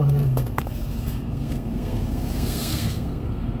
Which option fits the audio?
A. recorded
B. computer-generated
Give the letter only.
B